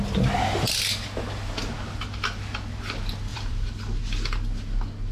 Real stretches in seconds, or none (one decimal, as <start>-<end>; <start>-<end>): 0.0-3.3; 4.0-5.1